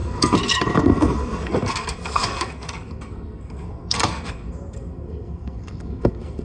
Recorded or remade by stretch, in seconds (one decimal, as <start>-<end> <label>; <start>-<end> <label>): 0.0-6.4 remade